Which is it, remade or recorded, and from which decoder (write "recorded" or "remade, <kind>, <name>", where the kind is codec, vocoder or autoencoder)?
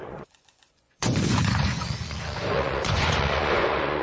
remade, vocoder, Vocos